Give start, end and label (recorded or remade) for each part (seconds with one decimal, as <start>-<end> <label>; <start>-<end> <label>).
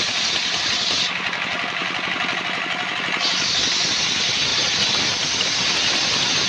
0.0-4.5 recorded; 4.5-5.0 remade; 5.0-6.5 recorded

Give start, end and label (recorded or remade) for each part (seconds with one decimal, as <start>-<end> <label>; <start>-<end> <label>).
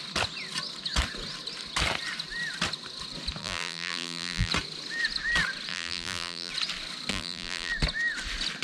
0.0-3.4 recorded; 3.4-4.5 remade; 4.5-5.7 recorded; 5.7-6.5 remade; 6.5-7.1 recorded; 7.1-7.7 remade; 7.7-8.6 recorded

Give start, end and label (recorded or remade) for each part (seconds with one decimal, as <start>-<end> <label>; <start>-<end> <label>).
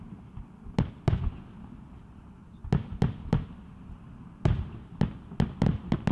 0.0-6.1 recorded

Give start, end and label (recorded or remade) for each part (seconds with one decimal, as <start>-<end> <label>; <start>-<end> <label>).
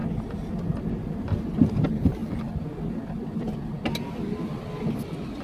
0.0-0.8 recorded; 0.8-2.2 remade; 2.2-5.4 recorded